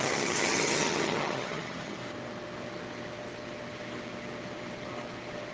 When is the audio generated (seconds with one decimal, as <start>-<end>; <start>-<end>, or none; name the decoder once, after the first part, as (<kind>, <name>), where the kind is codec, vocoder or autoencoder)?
0.0-2.0 (vocoder, HiFi-GAN)